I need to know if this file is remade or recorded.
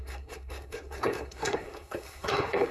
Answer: remade